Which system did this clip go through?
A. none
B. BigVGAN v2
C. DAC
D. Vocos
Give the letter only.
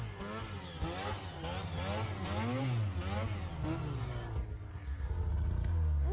A